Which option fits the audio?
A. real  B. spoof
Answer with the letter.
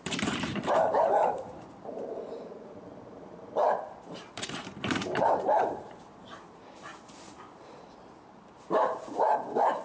B